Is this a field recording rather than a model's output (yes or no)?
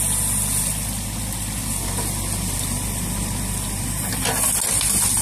yes